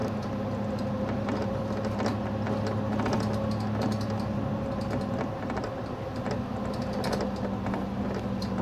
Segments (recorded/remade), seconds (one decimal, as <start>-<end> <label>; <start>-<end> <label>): 0.0-8.6 recorded